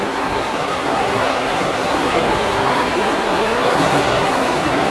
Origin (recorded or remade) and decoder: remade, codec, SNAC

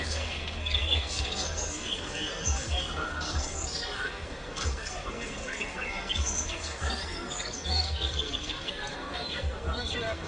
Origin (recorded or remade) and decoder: remade, codec, SNAC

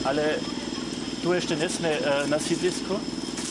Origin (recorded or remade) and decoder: recorded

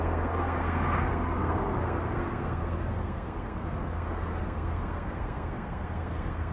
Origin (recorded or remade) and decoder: remade, codec, SNAC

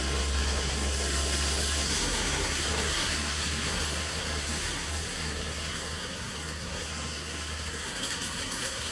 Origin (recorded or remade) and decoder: remade, codec, SNAC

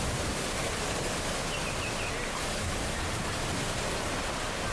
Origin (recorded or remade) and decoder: recorded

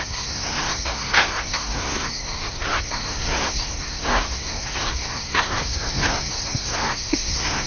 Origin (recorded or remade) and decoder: remade, codec, SNAC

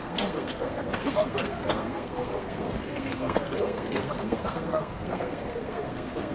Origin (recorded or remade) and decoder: remade, codec, SNAC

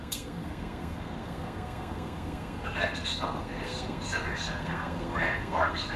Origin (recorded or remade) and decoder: remade, codec, SNAC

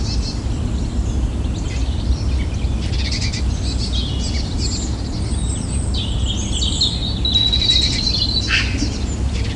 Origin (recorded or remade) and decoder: recorded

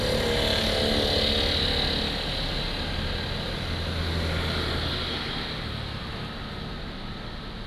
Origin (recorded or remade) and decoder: recorded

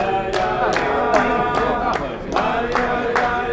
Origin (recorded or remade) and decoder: recorded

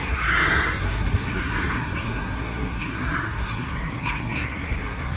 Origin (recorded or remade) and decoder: remade, codec, SNAC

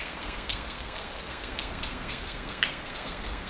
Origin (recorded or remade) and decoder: remade, codec, SNAC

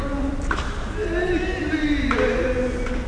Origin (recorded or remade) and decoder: recorded